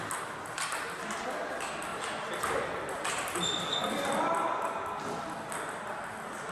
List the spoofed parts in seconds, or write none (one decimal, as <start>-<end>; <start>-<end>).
none